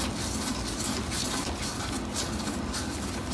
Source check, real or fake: real